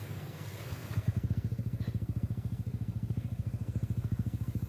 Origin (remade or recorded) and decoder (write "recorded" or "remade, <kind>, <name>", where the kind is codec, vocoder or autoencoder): remade, codec, SNAC